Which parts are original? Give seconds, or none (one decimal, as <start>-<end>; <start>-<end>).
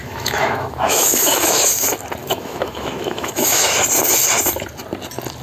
1.6-2.2; 3.7-5.4